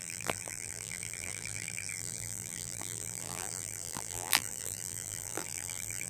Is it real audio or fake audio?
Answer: fake